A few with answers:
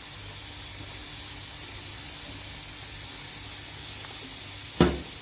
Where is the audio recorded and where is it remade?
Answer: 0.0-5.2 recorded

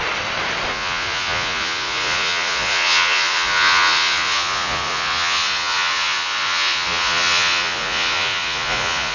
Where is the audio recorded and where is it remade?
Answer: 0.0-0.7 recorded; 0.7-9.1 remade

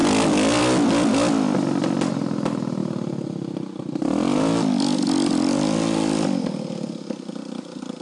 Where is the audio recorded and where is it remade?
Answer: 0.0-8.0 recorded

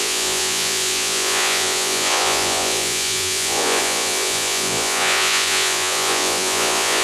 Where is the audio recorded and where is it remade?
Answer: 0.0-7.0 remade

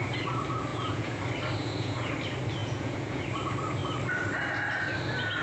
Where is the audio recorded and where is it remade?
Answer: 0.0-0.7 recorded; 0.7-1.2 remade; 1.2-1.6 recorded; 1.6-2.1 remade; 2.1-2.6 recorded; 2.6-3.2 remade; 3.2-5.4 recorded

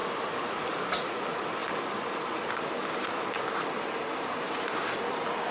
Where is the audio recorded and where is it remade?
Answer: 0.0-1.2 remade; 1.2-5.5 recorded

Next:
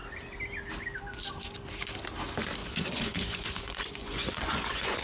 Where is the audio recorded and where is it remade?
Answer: 0.0-2.6 recorded; 2.6-5.0 remade

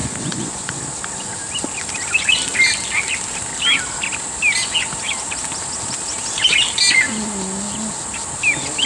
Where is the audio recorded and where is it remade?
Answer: 0.0-0.7 remade; 0.7-8.9 recorded